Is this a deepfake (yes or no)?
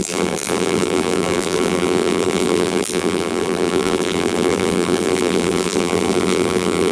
yes